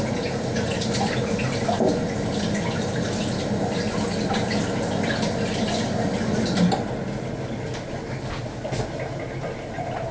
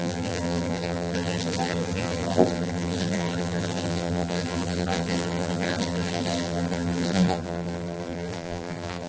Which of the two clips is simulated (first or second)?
second